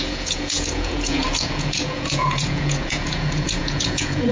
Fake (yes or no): yes